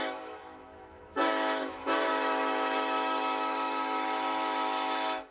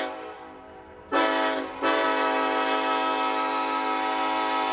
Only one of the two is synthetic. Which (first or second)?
first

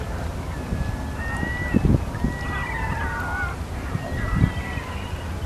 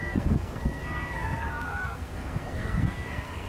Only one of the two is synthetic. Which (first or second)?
second